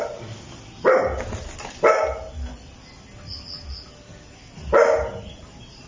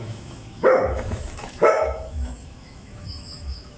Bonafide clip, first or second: first